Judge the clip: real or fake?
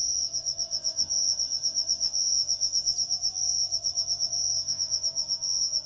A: fake